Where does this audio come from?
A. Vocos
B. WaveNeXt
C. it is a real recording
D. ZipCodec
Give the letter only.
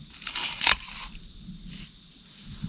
C